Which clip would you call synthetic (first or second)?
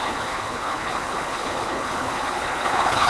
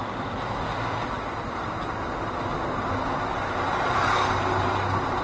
first